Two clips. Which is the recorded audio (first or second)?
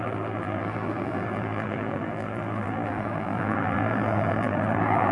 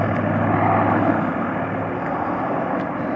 second